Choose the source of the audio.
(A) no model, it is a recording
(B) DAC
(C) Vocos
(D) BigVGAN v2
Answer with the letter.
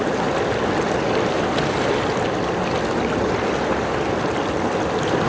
A